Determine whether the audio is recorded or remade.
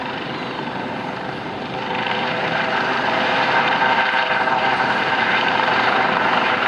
remade